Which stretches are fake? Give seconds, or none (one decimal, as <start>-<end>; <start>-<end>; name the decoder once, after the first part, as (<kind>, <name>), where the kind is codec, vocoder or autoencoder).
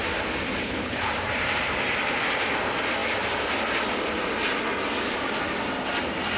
0.6-1.1 (codec, HILCodec)